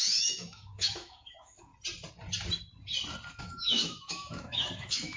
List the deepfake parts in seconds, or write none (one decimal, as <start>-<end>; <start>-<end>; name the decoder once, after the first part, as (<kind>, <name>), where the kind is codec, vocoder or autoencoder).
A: 0.0-1.7 (autoencoder, DAC-VAE); 3.4-5.2